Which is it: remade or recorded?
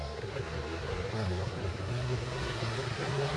remade